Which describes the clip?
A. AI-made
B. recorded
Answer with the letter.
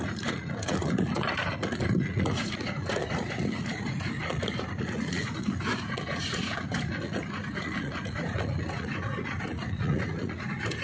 A